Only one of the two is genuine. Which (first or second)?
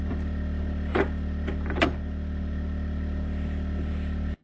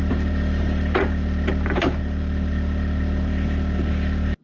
first